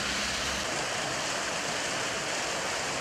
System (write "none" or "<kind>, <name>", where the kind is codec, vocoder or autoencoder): none